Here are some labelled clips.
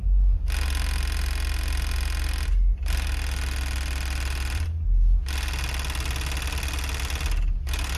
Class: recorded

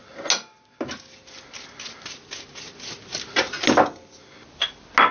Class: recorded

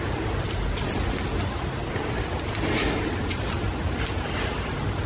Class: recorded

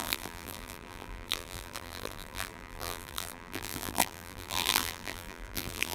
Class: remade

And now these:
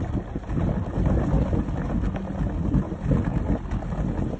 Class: recorded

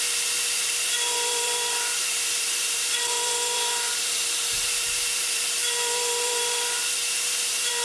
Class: remade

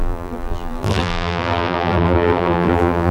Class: remade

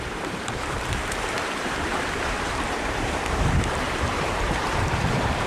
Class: remade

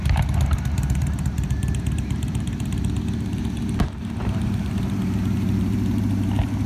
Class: remade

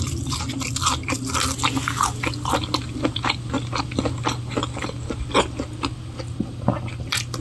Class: recorded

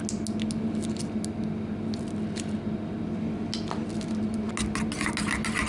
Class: recorded